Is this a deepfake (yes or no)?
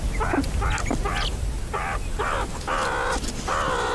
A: no